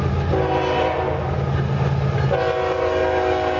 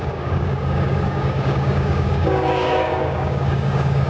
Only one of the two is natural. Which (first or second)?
first